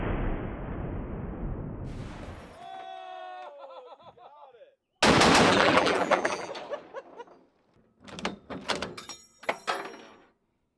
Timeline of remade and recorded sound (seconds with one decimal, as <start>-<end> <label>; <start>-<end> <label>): 0.0-5.5 recorded; 5.5-6.5 remade; 6.5-10.8 recorded